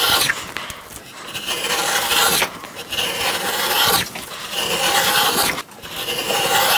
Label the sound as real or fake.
real